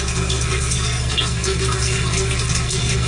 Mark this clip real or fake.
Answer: fake